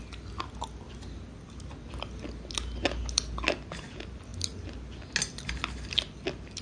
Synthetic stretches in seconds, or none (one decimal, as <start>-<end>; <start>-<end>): none

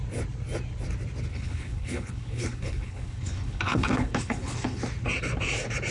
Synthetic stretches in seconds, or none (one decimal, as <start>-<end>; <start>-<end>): 1.3-4.8

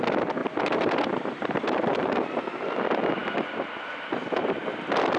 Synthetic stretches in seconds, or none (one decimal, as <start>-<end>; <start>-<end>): 0.4-2.2

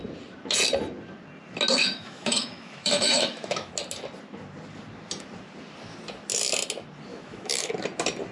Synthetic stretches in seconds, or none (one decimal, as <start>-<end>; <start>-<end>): 1.8-3.7; 7.1-7.7

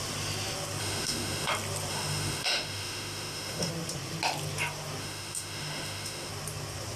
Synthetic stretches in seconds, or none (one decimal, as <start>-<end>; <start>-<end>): 0.8-1.5; 1.9-3.7; 5.0-6.3

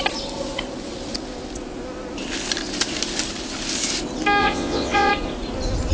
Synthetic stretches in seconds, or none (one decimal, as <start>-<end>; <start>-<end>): 4.4-5.1

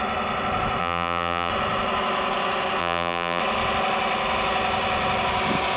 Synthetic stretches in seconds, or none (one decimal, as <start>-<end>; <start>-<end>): 0.8-1.5; 2.8-3.4